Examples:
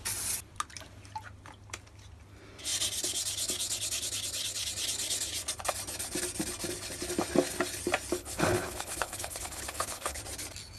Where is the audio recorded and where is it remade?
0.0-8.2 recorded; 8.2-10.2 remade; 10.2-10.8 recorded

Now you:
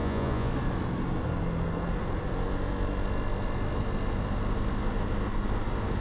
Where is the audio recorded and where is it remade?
0.0-0.5 remade; 0.5-6.0 recorded

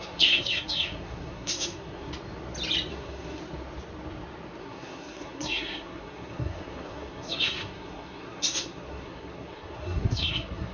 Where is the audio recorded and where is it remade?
0.0-2.1 remade; 2.1-2.9 recorded; 2.9-3.4 remade; 3.4-4.6 recorded; 4.6-10.7 remade

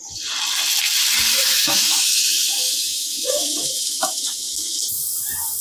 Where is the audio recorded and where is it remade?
0.0-1.4 recorded; 1.4-4.8 remade; 4.8-5.6 recorded